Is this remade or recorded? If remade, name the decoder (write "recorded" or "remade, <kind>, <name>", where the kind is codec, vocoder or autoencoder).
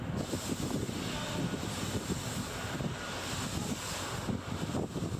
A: remade, vocoder, BigVGAN v2